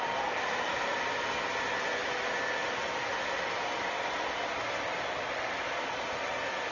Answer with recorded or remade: recorded